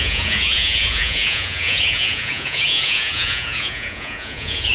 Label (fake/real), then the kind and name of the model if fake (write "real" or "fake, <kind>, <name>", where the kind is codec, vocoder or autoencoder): fake, vocoder, Vocos